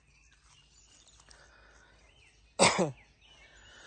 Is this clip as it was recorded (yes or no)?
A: yes